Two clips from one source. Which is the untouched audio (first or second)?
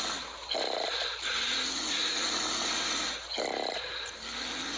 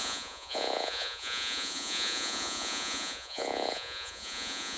first